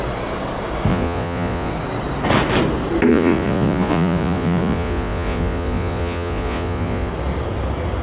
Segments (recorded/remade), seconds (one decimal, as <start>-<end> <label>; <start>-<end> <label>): 0.0-0.9 recorded; 0.9-1.7 remade; 1.7-3.1 recorded; 3.1-7.1 remade; 7.1-8.0 recorded